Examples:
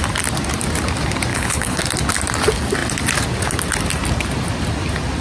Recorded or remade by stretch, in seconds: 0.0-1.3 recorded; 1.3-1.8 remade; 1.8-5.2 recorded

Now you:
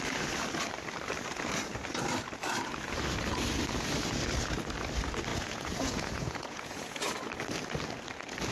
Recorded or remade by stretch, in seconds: 0.0-5.3 recorded; 5.3-7.0 remade; 7.0-8.5 recorded